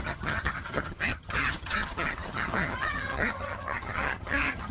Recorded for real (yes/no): no